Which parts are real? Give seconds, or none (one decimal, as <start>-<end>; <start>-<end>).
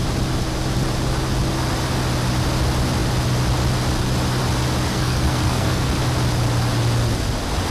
0.0-4.9; 6.0-7.7